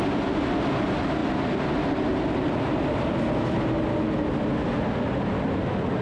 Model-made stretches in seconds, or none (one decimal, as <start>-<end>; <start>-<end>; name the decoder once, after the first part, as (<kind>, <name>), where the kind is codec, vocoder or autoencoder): none